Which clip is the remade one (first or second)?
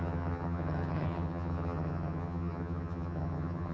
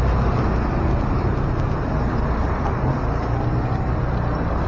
first